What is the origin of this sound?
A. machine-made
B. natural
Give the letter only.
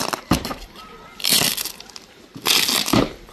B